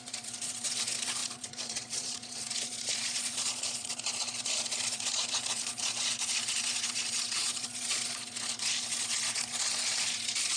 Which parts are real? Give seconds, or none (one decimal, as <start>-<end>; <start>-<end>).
none